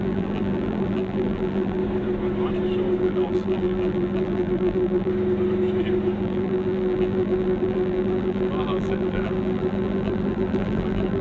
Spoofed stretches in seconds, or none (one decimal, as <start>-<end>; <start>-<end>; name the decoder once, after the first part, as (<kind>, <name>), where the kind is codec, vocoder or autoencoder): 0.0-1.8 (vocoder, BigVGAN v2); 3.0-5.1; 6.2-11.2